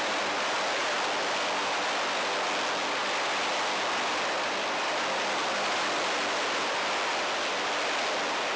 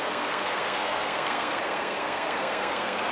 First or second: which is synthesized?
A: second